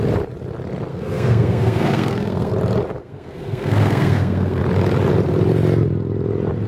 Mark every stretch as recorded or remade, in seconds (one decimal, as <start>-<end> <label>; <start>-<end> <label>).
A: 0.0-0.9 recorded; 0.9-2.5 remade; 2.5-3.0 recorded; 3.0-4.6 remade; 4.6-6.7 recorded